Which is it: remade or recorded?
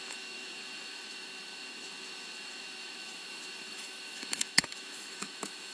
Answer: remade